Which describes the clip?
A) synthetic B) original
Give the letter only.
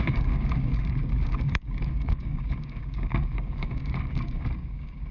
A